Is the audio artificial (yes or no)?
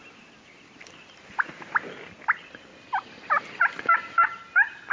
no